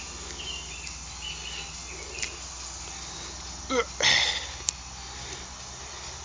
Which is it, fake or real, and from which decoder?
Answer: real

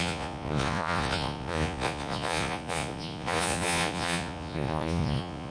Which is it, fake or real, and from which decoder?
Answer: fake, vocoder, Vocos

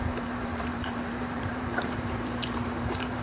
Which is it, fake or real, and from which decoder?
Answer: fake, vocoder, BigVGAN v2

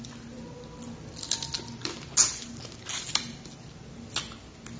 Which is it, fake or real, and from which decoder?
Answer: real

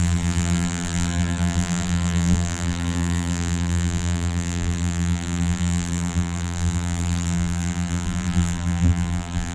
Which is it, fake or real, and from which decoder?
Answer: fake, vocoder, BigVGAN v2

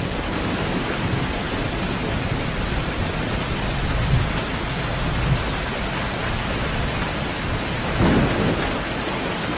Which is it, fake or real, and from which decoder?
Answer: real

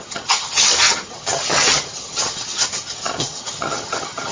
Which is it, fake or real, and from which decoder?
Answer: fake, vocoder, HiFi-GAN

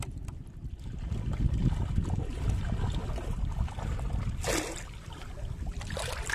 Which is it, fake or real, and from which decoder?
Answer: real